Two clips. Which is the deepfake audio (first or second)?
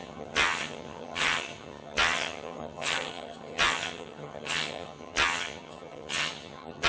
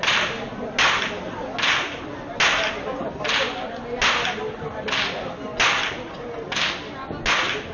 first